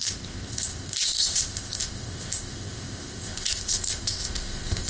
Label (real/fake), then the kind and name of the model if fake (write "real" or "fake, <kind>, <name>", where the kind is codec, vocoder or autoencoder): fake, codec, ZipCodec